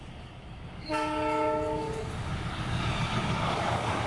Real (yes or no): no